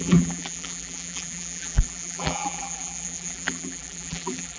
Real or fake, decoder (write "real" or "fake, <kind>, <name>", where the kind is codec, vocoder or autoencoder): fake, vocoder, BigVGAN v2